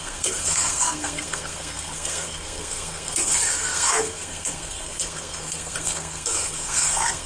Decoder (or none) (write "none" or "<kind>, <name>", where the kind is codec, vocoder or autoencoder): codec, SNAC